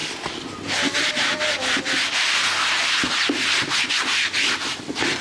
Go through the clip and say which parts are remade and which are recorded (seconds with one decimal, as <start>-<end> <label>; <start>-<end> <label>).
0.0-5.2 recorded

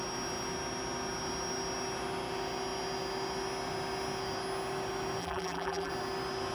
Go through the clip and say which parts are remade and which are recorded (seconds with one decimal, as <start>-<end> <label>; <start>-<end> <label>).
0.0-5.2 recorded; 5.2-5.9 remade; 5.9-6.5 recorded

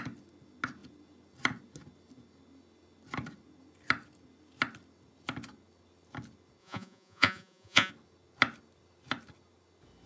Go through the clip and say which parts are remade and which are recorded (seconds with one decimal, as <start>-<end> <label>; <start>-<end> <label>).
0.0-6.6 recorded; 6.6-7.9 remade; 7.9-10.1 recorded

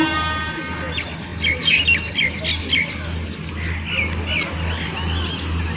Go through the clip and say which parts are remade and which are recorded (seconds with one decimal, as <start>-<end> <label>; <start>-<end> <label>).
0.0-5.8 recorded

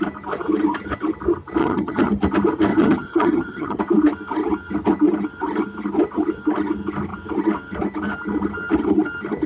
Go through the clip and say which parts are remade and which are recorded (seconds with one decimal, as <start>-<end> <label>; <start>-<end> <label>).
0.0-1.6 recorded; 1.6-2.1 remade; 2.1-2.7 recorded; 2.7-3.8 remade; 3.8-9.5 recorded

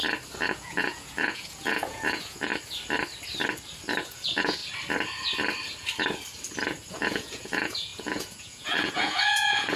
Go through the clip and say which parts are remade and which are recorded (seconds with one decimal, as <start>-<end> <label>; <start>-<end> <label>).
0.0-0.5 recorded; 0.5-2.5 remade; 2.5-4.0 recorded; 4.0-4.6 remade; 4.6-6.9 recorded; 6.9-9.8 remade